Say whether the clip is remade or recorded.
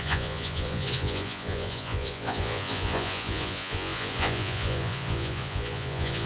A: remade